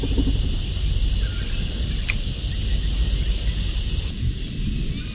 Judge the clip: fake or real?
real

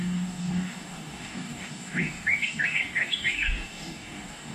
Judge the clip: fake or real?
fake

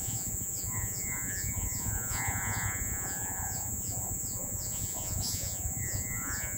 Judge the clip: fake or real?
fake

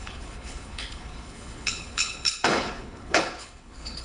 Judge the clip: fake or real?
fake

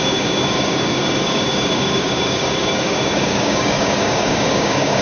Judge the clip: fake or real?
fake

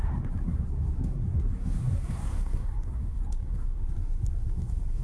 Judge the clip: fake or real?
fake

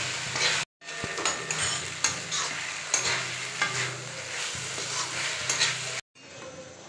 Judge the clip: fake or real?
real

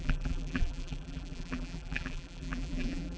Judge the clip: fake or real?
fake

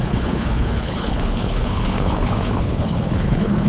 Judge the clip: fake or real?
fake